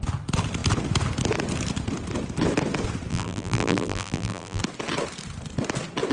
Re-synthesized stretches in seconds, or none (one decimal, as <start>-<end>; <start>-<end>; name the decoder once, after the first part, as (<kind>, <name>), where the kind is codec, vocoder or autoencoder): 3.1-4.6 (vocoder, BigVGAN v2)